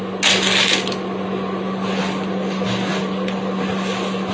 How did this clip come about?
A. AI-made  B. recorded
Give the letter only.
B